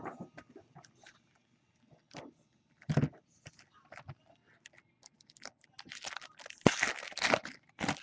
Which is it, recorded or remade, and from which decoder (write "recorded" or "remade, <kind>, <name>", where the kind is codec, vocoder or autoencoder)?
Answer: recorded